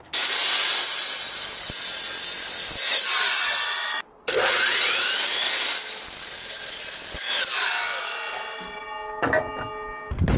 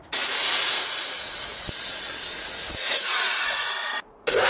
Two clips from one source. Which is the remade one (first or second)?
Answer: second